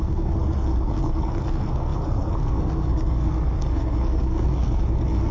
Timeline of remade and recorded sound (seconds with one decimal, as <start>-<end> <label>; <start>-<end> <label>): 0.0-5.3 remade